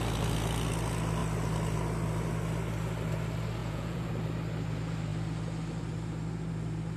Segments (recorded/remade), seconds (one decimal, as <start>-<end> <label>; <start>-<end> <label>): 0.0-3.6 recorded; 3.6-4.1 remade; 4.1-7.0 recorded